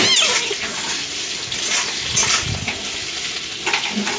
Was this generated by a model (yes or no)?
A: no